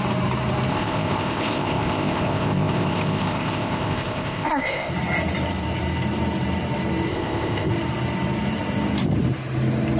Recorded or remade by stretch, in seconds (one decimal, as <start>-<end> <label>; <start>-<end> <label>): 0.0-0.7 recorded; 0.7-4.9 remade; 4.9-7.1 recorded; 7.1-7.7 remade; 7.7-10.0 recorded